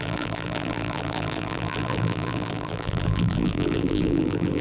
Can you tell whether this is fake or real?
fake